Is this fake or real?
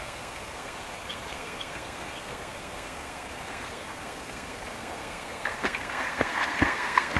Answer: fake